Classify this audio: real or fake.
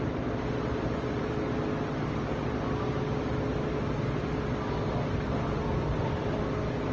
real